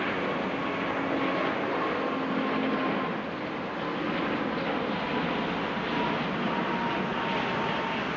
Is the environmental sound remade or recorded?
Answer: recorded